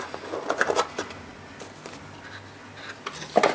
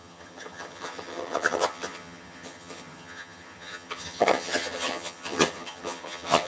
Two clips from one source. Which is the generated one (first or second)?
second